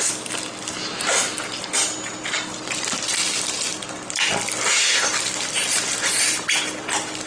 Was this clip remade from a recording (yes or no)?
no